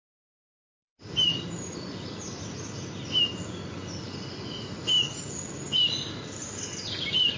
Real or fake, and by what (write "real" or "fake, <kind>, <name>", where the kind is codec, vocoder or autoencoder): real